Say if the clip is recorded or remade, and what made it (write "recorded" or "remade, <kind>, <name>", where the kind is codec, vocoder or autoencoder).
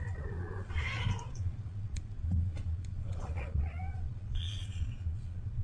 remade, vocoder, Vocos